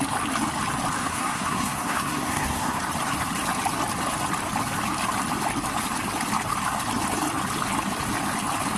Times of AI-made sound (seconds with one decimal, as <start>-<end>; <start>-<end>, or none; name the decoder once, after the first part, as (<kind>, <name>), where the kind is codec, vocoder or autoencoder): 1.0-2.8 (codec, SNAC)